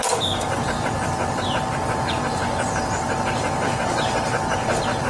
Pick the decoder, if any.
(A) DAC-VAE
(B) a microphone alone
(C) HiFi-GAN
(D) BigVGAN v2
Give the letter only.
D